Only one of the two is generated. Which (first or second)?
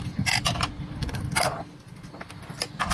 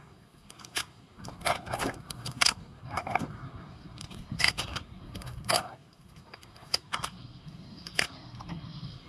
second